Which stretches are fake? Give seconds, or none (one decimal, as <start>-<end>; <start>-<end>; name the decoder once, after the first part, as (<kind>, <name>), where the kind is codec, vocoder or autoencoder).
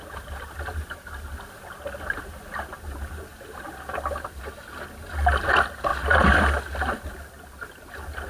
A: none